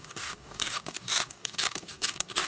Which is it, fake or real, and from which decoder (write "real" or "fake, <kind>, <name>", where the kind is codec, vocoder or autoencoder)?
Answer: fake, codec, DAC